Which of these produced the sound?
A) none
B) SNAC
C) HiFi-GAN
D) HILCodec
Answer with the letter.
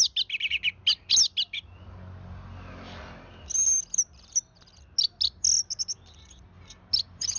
A